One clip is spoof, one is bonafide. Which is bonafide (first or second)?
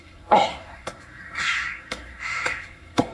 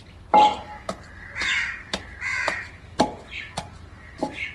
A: second